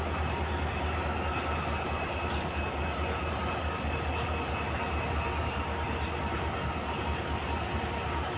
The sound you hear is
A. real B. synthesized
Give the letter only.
A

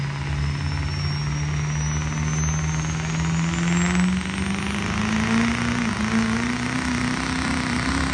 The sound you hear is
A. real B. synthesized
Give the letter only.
A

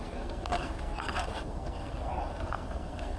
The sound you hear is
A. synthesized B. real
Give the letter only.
A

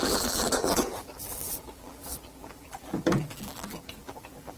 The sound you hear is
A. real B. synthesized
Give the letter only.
B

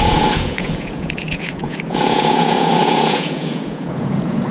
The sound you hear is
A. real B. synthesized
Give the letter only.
B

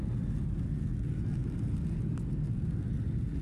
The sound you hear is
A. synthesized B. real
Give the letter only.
B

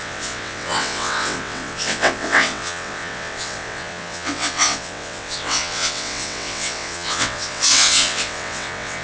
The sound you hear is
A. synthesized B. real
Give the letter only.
A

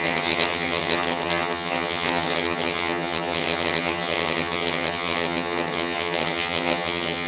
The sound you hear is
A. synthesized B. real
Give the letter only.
A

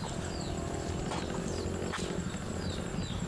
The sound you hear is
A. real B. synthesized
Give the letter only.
A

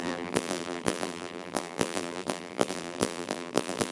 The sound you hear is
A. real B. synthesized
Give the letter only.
B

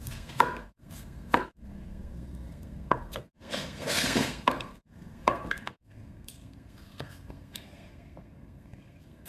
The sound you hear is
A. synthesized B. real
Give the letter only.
A